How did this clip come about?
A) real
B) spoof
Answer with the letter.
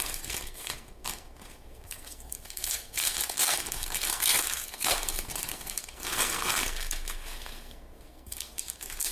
B